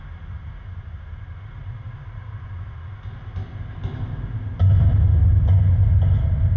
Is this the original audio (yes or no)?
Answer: yes